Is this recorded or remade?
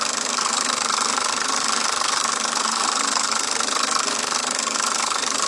remade